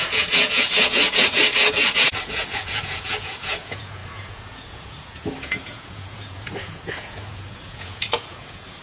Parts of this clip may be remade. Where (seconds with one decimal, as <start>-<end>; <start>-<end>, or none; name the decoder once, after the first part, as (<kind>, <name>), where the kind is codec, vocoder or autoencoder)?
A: 0.0-8.8 (vocoder, Vocos)